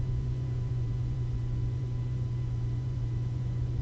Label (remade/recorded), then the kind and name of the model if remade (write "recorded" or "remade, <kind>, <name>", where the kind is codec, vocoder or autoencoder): remade, vocoder, Vocos